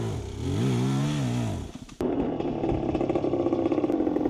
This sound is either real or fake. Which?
real